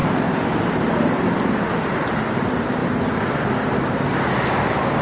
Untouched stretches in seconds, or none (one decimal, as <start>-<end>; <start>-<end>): 0.0-5.0